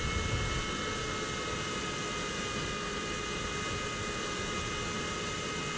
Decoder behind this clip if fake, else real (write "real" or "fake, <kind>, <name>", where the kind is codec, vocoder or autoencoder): real